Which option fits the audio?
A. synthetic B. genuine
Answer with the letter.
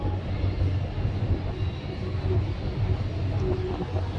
B